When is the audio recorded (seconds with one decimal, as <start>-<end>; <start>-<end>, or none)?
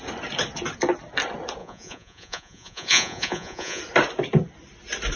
0.0-1.6; 3.8-5.2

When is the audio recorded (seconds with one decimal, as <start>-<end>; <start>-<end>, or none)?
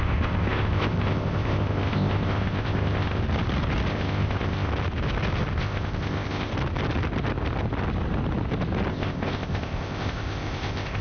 3.2-3.9; 4.7-5.6; 6.5-8.9